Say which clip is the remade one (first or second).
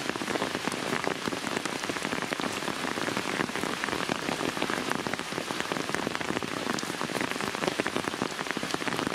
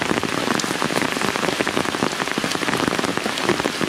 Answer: first